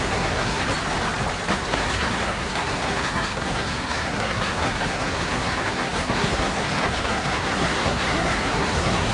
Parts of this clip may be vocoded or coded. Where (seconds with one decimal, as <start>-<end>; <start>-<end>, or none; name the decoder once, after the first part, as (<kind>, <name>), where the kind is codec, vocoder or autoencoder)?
0.0-0.6 (codec, SNAC); 1.5-9.1